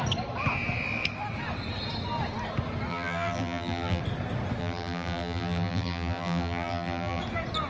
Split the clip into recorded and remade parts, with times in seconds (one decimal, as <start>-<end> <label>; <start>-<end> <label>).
0.0-2.9 recorded; 2.9-4.0 remade; 4.0-4.6 recorded; 4.6-7.2 remade; 7.2-7.7 recorded